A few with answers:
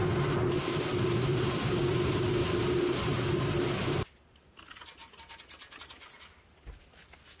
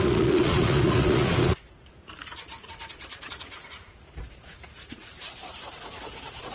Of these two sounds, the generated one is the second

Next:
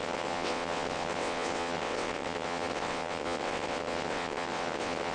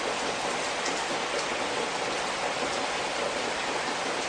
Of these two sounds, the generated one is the first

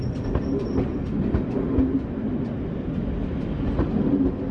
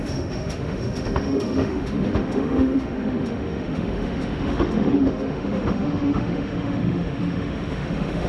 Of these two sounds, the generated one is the second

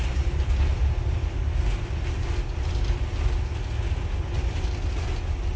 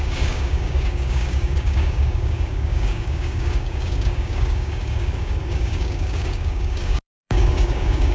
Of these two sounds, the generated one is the second